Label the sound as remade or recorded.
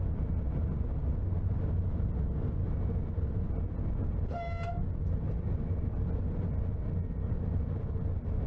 recorded